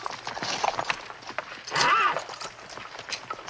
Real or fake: real